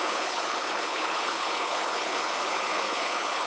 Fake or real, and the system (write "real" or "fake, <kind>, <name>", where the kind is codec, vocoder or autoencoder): fake, codec, HILCodec